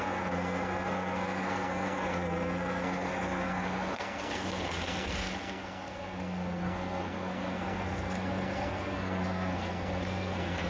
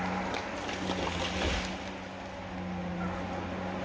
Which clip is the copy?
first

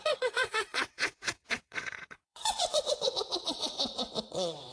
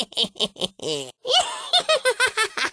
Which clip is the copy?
first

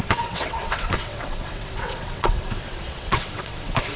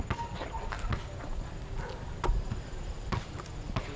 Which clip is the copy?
first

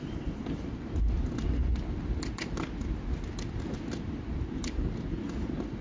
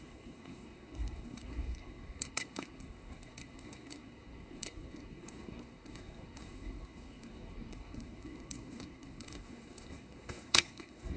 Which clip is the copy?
second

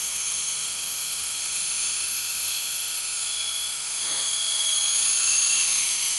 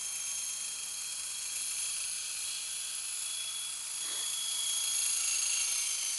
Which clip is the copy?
first